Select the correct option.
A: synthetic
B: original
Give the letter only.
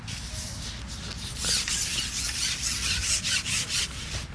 B